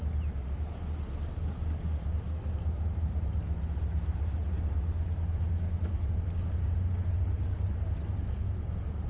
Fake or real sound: real